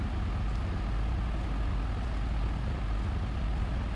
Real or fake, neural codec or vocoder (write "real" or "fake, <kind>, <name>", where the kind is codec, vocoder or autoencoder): real